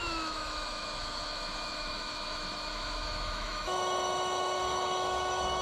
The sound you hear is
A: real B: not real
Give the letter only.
B